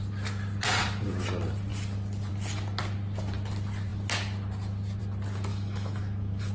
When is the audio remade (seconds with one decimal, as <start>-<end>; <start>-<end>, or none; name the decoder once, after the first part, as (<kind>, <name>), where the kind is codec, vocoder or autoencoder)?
5.5-6.5 (autoencoder, DAC-VAE)